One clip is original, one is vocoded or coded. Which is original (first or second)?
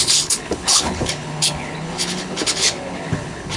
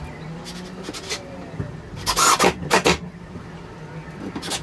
second